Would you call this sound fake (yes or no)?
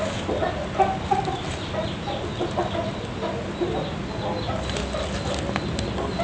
no